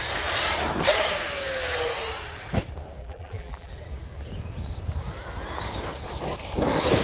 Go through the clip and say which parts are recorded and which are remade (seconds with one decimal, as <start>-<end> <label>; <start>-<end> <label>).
0.0-3.0 recorded; 3.0-3.7 remade; 3.7-7.0 recorded